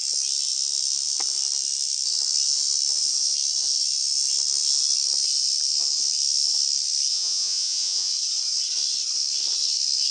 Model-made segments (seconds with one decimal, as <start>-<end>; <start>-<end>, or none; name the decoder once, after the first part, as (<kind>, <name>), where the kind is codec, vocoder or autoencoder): 7.1-8.1 (vocoder, Vocos)